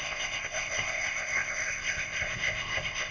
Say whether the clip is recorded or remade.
remade